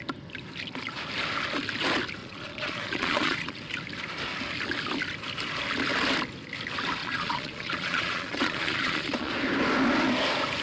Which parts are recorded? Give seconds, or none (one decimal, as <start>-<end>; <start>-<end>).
0.0-2.2; 3.6-7.0; 9.3-10.6